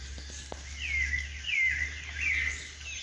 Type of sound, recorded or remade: recorded